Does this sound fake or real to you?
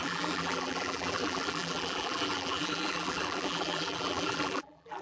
fake